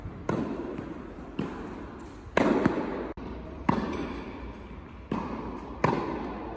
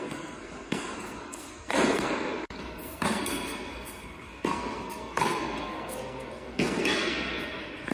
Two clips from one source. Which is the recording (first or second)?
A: first